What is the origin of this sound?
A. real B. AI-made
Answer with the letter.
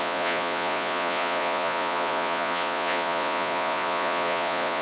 B